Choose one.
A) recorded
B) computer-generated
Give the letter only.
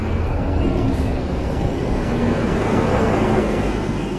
B